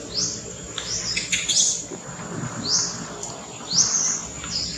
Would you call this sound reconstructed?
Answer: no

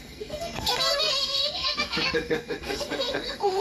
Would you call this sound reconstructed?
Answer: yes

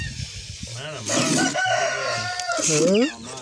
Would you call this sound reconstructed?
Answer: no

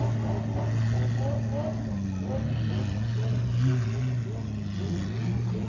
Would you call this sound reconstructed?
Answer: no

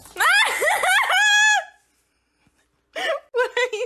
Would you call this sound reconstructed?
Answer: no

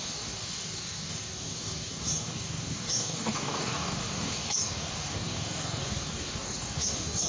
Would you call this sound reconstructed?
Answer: yes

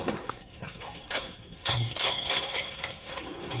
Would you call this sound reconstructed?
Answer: yes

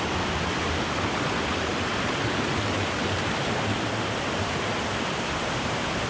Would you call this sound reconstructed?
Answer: no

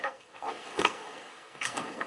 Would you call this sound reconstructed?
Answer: yes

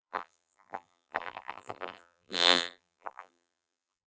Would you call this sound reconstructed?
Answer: yes